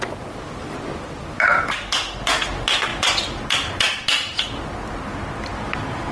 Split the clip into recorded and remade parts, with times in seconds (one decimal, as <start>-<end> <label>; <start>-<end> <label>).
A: 0.0-6.1 recorded